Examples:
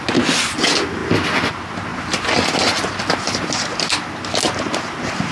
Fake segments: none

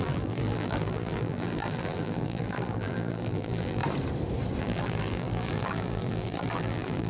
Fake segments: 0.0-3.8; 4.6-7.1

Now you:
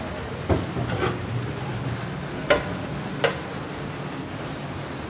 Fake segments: none